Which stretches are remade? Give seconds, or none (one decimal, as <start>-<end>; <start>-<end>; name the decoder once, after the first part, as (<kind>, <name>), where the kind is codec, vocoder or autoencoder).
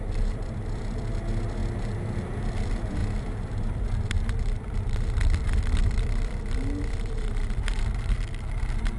0.0-1.6 (vocoder, BigVGAN v2); 2.4-9.0